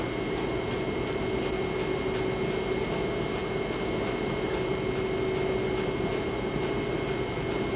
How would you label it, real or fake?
real